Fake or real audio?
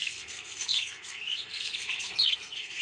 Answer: fake